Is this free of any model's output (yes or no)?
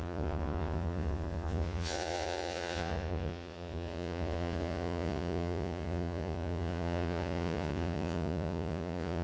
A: no